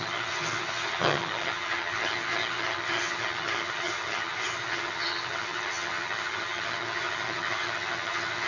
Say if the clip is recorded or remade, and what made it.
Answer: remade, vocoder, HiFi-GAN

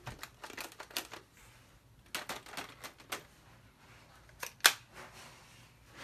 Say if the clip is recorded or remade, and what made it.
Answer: recorded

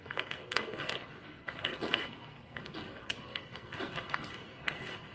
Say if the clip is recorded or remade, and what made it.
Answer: remade, codec, SNAC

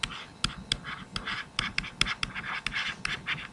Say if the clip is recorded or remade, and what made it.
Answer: recorded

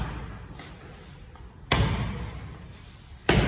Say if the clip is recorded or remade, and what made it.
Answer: recorded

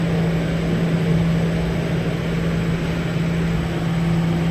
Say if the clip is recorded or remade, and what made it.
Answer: recorded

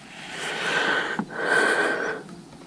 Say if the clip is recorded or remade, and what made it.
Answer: recorded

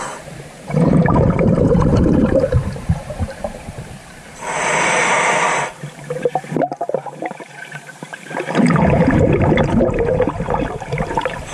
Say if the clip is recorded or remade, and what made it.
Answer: remade, vocoder, BigVGAN v2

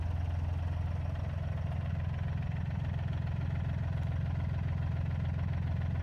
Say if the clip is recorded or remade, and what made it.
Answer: recorded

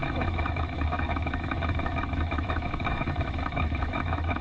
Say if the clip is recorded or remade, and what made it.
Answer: remade, autoencoder, DAC-VAE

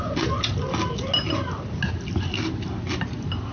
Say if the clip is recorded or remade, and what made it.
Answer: recorded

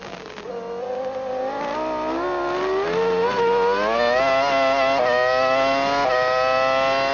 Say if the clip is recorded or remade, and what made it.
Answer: recorded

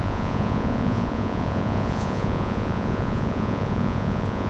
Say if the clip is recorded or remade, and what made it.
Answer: remade, vocoder, Vocos